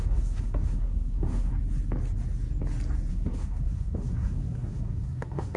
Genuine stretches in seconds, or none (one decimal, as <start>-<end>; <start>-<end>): 1.5-3.1